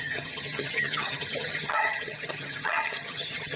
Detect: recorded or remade remade